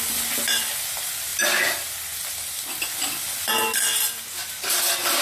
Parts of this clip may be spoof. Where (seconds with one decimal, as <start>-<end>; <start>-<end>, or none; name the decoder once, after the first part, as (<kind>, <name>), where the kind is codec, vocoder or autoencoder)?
none